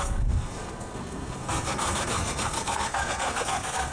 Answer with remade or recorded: remade